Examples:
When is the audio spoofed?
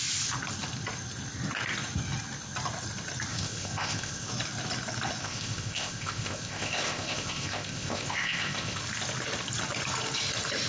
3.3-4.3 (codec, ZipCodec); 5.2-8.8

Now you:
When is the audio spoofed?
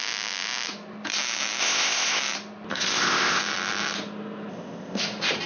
1.6-2.2 (codec, ZipCodec); 2.7-3.4; 4.5-5.0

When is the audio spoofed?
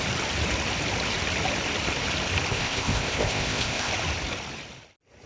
2.5-3.9 (codec, ZipCodec)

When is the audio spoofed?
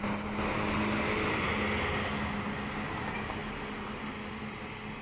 none